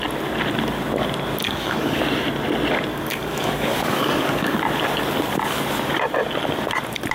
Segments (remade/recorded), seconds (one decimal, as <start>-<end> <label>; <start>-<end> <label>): 0.0-1.4 recorded; 1.4-2.0 remade; 2.0-2.9 recorded; 2.9-4.6 remade; 4.6-7.1 recorded